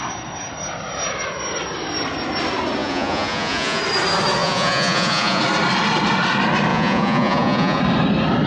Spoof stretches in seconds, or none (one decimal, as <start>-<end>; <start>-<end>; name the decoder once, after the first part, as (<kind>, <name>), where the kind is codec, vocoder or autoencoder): 2.8-3.8 (vocoder, Vocos); 4.4-5.4; 6.7-7.8